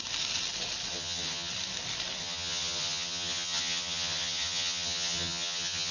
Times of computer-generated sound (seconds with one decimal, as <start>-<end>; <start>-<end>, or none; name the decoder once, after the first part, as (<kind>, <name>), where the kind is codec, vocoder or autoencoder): 0.9-1.5 (vocoder, HiFi-GAN); 2.2-5.9